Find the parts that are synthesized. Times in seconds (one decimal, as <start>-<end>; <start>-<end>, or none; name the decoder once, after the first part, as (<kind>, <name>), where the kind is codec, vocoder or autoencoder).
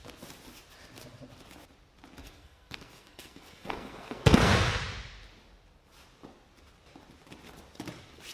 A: 2.2-4.8 (codec, SNAC)